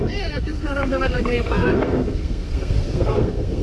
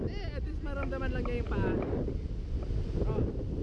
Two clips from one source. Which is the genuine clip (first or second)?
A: second